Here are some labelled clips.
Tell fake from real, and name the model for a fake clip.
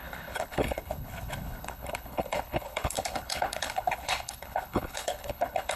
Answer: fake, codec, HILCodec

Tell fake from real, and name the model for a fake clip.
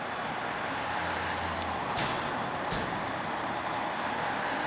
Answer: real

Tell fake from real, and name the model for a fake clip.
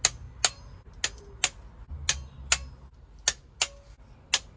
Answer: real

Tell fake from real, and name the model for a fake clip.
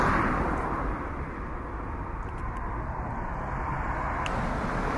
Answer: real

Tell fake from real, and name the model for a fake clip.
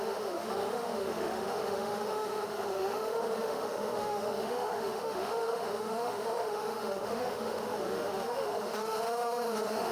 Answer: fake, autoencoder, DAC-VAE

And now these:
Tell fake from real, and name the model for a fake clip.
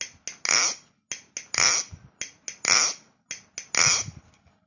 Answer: real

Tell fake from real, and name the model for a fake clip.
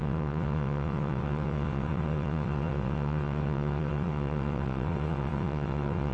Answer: fake, vocoder, WaveNeXt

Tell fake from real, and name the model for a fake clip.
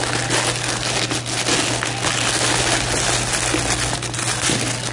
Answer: real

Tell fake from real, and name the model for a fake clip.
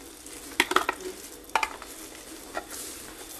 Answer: real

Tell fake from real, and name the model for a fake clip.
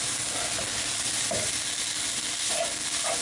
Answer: real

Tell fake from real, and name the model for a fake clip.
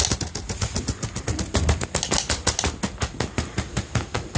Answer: real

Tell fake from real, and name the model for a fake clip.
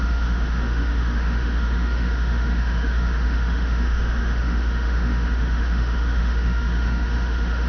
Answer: fake, autoencoder, DAC-VAE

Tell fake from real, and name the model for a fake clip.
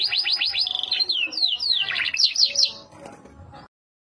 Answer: real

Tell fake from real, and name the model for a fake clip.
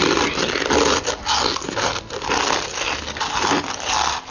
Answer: real